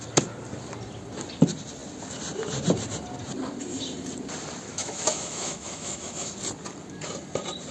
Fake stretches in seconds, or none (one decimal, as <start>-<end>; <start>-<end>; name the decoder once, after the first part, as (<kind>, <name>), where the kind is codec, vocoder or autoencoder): 4.7-6.4 (autoencoder, DAC-VAE)